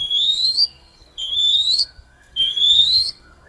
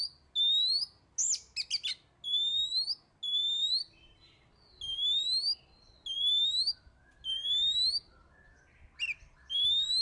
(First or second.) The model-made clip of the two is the first